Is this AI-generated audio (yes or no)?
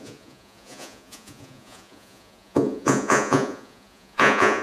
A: yes